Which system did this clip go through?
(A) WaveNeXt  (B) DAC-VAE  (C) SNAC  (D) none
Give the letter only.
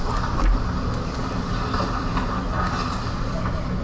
D